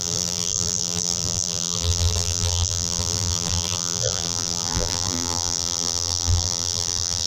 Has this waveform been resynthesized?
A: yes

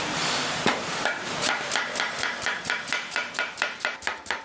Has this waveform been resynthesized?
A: yes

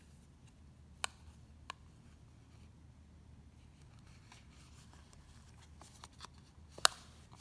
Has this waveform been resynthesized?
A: no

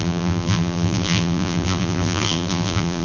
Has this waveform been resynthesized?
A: yes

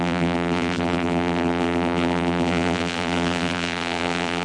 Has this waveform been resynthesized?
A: yes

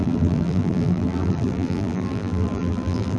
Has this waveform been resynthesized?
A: yes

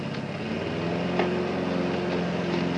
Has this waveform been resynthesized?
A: no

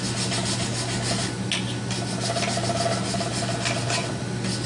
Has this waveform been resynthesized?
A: no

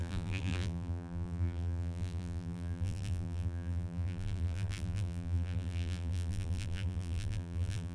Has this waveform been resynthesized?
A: yes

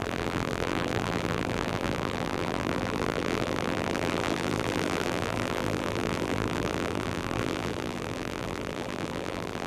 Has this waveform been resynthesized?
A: yes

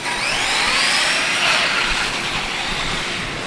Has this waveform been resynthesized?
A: yes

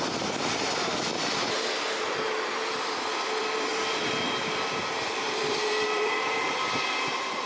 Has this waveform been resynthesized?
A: yes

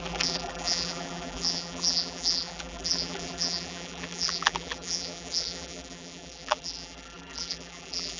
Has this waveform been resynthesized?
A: yes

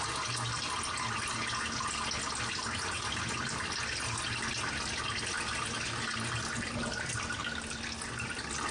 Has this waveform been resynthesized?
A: no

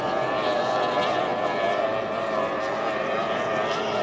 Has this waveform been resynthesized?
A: no